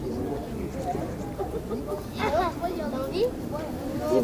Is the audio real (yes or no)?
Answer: yes